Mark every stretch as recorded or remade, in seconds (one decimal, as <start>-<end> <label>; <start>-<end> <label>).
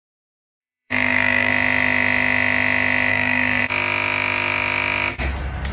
0.0-0.6 recorded; 0.6-1.5 remade; 1.5-3.1 recorded; 3.1-3.6 remade; 3.6-5.7 recorded